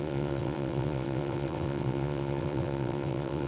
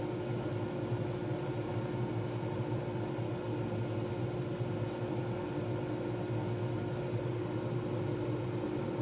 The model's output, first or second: first